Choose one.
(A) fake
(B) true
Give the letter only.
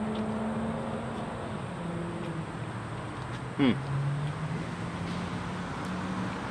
B